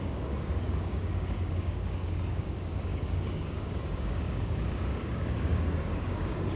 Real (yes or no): no